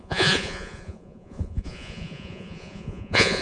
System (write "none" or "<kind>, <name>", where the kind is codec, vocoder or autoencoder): vocoder, Vocos